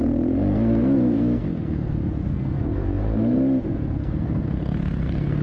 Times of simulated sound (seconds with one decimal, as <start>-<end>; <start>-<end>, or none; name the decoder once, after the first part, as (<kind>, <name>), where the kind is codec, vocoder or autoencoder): 0.0-5.4 (codec, SNAC)